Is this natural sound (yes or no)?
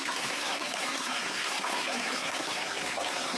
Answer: no